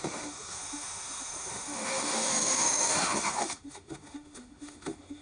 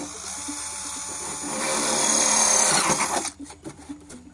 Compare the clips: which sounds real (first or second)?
second